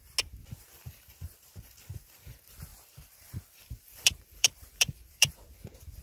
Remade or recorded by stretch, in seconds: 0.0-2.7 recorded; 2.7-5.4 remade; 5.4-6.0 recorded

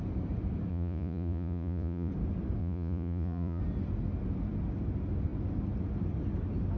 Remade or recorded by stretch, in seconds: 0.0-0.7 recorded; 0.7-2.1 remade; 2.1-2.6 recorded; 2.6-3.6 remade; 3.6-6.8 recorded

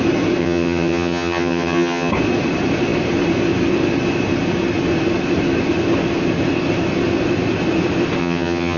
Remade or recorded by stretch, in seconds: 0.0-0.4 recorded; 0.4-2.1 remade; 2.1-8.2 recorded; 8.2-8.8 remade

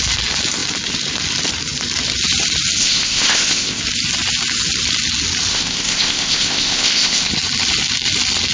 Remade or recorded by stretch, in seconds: 0.0-2.8 recorded; 2.8-3.8 remade; 3.8-5.5 recorded; 5.5-7.3 remade; 7.3-8.5 recorded

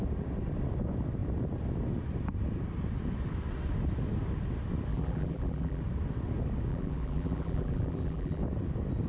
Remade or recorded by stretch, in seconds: 0.0-4.9 recorded; 4.9-5.8 remade; 5.8-6.7 recorded; 6.7-8.4 remade; 8.4-9.1 recorded

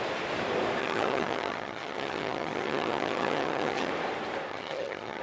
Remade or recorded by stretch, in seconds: 0.0-0.8 recorded; 0.8-3.9 remade; 3.9-4.5 recorded; 4.5-5.2 remade